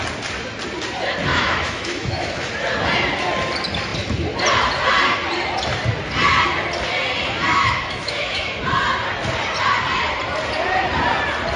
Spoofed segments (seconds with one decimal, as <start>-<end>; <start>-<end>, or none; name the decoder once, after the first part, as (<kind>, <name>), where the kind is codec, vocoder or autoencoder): 1.3-2.5 (autoencoder, DAC-VAE); 7.5-8.5